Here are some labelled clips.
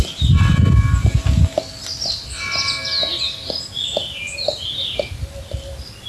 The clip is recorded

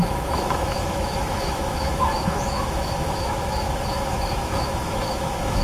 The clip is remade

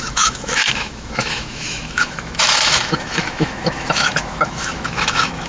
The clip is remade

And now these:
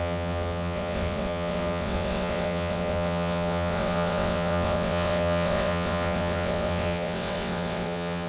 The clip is remade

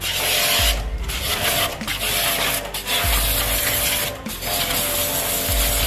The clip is recorded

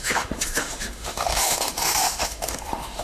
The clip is remade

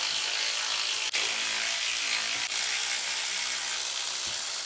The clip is recorded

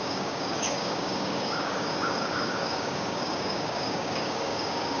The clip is remade